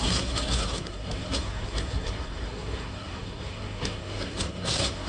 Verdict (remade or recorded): remade